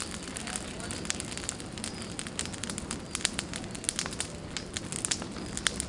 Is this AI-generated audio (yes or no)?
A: no